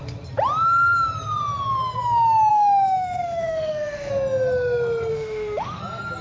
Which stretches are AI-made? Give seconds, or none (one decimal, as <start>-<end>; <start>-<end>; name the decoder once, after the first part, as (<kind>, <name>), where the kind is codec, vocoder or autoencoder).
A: 2.5-4.1 (autoencoder, DAC-VAE); 5.1-5.8